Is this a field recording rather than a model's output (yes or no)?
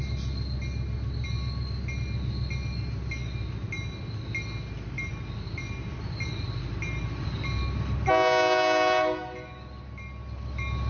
yes